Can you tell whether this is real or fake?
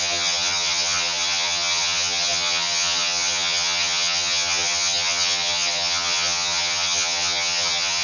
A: fake